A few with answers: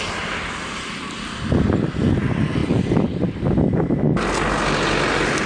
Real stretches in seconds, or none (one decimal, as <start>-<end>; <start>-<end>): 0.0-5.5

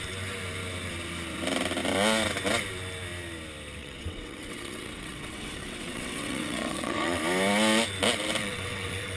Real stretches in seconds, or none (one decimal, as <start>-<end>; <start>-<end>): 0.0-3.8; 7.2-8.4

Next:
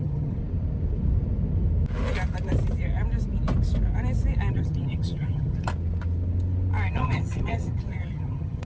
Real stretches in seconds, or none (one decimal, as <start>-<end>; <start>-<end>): 0.4-4.5; 5.7-6.9

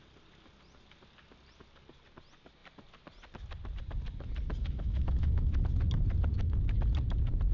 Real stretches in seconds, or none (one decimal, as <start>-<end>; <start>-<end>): 0.0-4.6; 5.6-6.3; 6.8-7.5

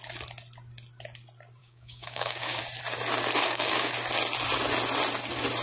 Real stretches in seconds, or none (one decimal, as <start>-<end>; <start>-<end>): 0.0-1.6; 2.6-3.4; 3.9-5.6

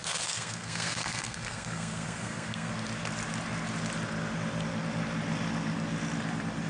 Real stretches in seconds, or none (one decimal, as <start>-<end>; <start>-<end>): 2.7-6.7

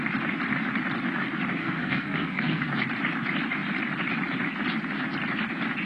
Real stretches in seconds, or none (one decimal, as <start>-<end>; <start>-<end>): 0.0-1.6; 2.7-5.9

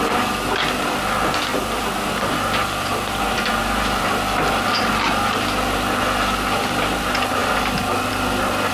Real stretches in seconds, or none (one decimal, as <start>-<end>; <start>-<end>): 0.0-8.7